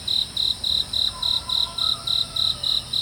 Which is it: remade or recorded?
recorded